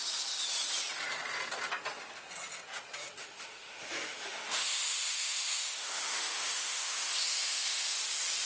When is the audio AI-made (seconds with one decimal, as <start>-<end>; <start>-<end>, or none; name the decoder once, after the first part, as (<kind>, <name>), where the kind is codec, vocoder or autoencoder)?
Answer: 3.2-8.0 (autoencoder, DAC-VAE)